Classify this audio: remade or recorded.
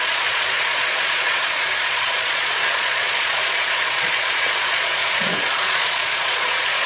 remade